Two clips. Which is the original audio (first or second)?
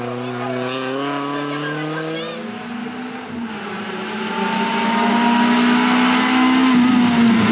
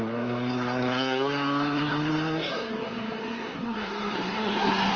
first